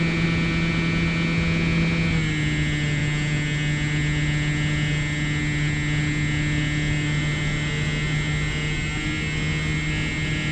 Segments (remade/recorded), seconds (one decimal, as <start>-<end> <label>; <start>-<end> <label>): 0.0-10.5 recorded